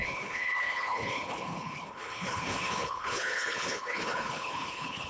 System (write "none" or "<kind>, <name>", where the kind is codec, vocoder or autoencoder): codec, HILCodec